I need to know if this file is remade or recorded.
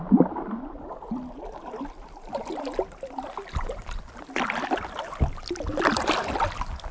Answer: recorded